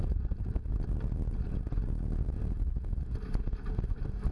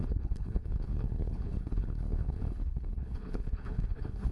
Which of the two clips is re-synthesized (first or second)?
second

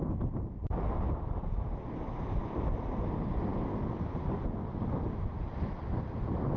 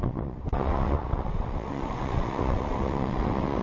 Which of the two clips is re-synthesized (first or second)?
second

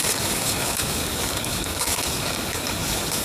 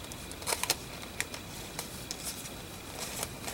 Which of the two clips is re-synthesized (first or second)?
first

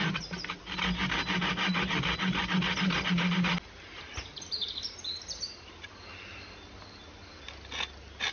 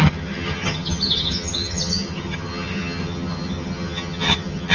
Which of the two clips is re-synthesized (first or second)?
second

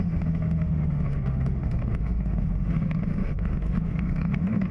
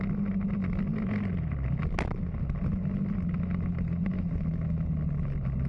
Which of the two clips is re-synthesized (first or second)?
first